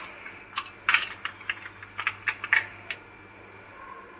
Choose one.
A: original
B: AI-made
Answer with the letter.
A